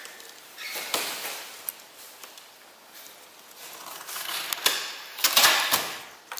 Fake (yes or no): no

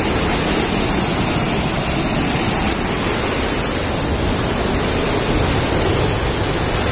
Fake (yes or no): no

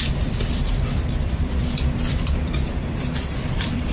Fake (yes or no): yes